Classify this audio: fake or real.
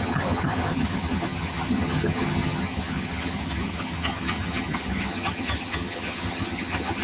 fake